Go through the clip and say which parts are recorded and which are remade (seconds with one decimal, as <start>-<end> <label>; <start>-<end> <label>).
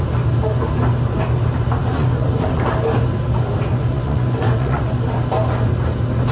0.0-1.8 recorded; 1.8-2.7 remade; 2.7-3.7 recorded; 3.7-5.0 remade; 5.0-6.3 recorded